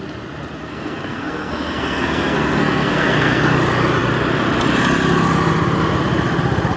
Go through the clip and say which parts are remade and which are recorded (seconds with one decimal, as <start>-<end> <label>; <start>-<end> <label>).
0.0-0.6 recorded; 0.6-3.4 remade; 3.4-6.8 recorded